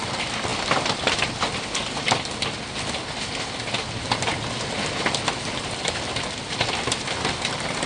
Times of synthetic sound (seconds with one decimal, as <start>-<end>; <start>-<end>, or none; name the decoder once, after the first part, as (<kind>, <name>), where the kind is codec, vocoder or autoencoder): none